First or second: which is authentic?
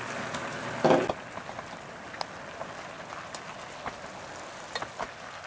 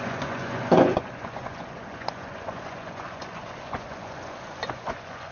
first